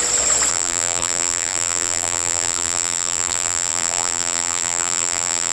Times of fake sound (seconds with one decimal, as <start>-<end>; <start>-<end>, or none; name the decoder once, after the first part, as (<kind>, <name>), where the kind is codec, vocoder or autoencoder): 0.5-5.5 (vocoder, BigVGAN v2)